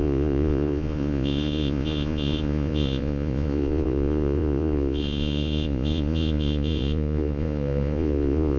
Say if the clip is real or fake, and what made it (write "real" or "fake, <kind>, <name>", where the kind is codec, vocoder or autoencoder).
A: fake, vocoder, Vocos